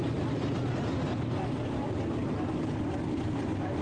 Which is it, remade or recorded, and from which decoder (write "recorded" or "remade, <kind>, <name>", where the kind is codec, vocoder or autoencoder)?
recorded